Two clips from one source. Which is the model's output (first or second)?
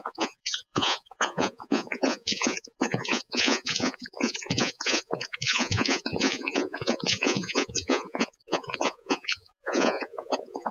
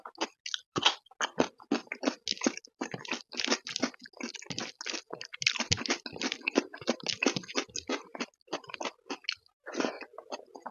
first